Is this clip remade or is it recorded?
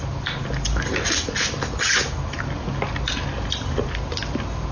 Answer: recorded